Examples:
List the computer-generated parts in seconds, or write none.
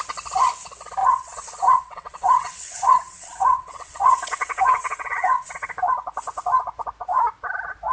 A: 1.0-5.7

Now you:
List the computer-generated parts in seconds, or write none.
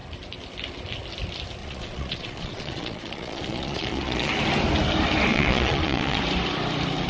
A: 1.6-4.3; 5.3-6.2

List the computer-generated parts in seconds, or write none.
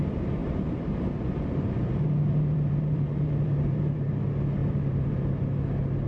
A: 0.4-4.1; 4.6-5.2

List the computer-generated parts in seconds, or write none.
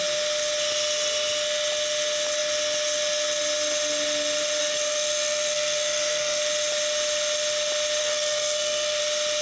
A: 4.6-6.4; 8.0-9.0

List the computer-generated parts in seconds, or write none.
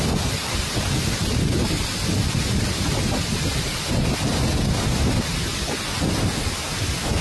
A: none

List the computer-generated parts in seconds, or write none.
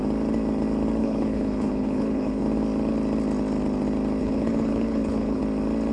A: 1.0-2.4; 4.2-5.4